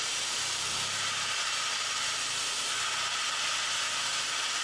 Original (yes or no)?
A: yes